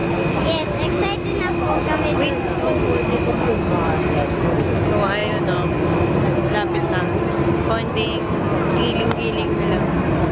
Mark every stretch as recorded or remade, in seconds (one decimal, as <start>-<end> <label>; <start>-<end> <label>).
0.0-1.4 remade; 1.4-10.3 recorded